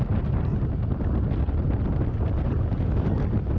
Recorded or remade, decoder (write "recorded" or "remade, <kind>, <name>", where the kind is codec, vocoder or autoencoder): recorded